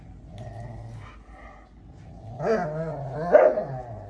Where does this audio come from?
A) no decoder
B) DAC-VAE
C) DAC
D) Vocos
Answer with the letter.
A